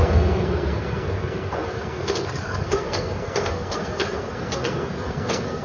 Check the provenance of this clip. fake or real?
fake